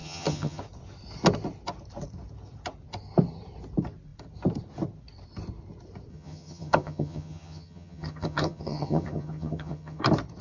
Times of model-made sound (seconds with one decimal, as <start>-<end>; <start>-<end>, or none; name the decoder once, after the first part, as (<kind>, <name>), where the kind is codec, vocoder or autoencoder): 0.0-0.6 (vocoder, HiFi-GAN); 6.1-10.0

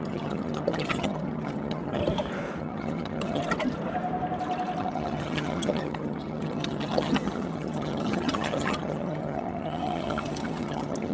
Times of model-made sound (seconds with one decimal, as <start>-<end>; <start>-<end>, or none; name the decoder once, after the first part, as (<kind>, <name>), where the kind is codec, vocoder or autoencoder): 0.0-2.0 (vocoder, HiFi-GAN); 2.6-3.4; 4.8-11.1

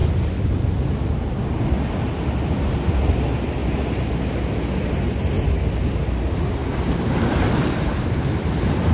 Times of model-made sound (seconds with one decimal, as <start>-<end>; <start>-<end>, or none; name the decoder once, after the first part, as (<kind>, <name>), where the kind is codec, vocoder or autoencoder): none

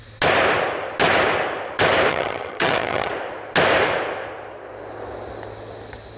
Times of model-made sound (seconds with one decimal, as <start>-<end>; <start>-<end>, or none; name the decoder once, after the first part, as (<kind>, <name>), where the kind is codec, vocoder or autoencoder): 2.1-3.1 (vocoder, HiFi-GAN)